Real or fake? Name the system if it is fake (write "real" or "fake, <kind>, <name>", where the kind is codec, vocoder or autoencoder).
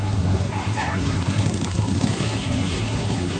fake, codec, SNAC